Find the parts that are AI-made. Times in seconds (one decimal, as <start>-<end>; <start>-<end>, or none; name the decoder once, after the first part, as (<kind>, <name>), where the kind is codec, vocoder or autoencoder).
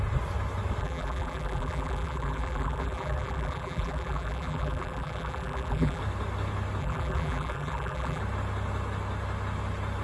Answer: 0.8-6.0 (vocoder, BigVGAN v2); 6.8-8.2